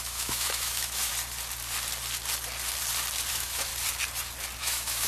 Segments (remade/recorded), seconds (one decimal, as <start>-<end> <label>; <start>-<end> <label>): 0.0-1.1 remade; 1.1-3.3 recorded; 3.3-3.7 remade; 3.7-4.6 recorded; 4.6-5.1 remade